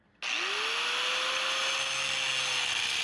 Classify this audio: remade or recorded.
recorded